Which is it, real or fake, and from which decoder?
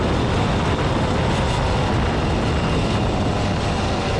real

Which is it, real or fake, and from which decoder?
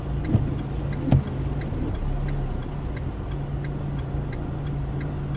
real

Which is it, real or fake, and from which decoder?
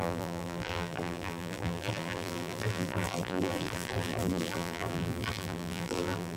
fake, vocoder, BigVGAN v2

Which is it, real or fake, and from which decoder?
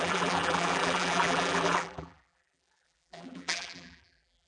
fake, vocoder, BigVGAN v2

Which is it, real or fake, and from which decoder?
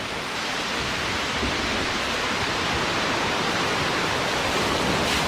fake, vocoder, BigVGAN v2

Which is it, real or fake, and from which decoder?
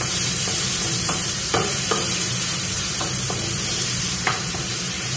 fake, vocoder, BigVGAN v2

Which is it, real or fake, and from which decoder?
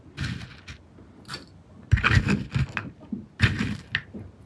real